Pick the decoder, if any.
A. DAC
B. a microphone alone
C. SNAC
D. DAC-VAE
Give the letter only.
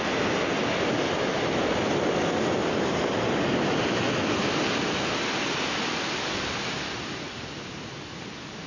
B